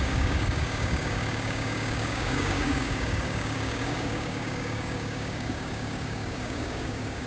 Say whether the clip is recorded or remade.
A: remade